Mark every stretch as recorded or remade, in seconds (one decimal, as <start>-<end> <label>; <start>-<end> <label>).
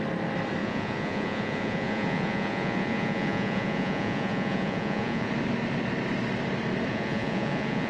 0.0-0.6 recorded; 0.6-5.3 remade; 5.3-6.9 recorded; 6.9-7.9 remade